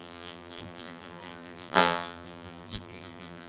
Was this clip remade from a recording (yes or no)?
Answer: yes